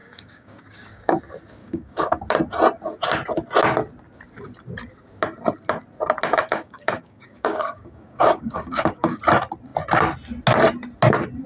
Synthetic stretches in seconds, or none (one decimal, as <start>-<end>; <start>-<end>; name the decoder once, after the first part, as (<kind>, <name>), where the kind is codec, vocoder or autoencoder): 0.0-1.2 (codec, DAC); 1.6-2.2; 6.4-9.2